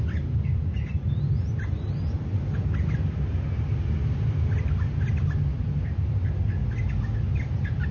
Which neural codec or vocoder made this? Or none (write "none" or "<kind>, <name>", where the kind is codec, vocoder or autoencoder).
none